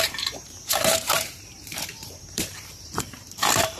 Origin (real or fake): fake